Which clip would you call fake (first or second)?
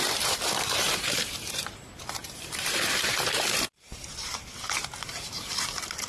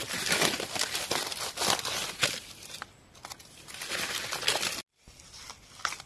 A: first